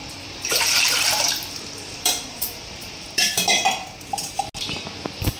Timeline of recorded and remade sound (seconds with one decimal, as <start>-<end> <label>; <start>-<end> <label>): 0.0-3.2 remade; 3.2-5.4 recorded